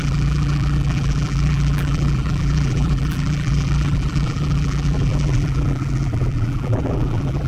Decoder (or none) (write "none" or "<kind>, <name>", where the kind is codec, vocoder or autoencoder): vocoder, BigVGAN v2